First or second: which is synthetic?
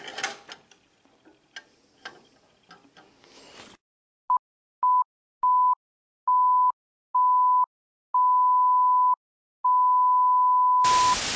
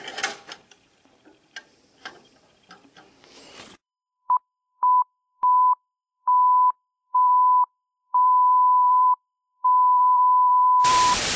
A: second